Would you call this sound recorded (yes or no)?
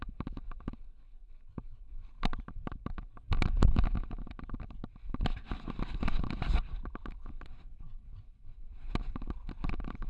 yes